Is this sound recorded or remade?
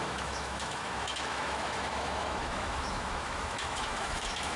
remade